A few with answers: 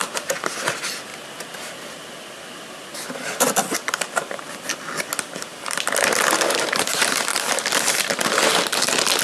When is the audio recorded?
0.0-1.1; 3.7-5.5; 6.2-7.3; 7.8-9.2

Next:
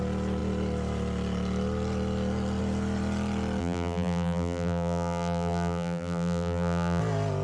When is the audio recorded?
0.0-3.6; 7.0-7.4

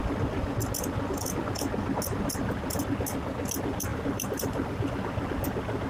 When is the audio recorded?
0.0-3.9; 4.9-5.9

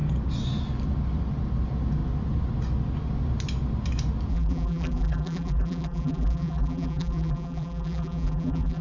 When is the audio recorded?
0.0-4.3

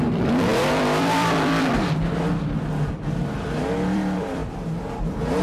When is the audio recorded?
4.4-4.9